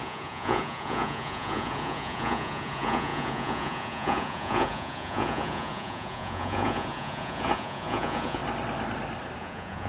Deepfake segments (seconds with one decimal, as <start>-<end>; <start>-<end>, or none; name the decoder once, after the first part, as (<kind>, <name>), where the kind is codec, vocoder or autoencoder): 0.0-8.4 (vocoder, Vocos); 9.4-9.9